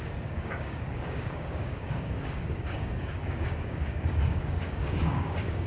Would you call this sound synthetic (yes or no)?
yes